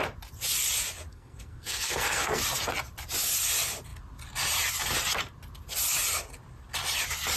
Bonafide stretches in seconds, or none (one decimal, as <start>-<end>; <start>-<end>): 0.0-1.1; 2.4-7.4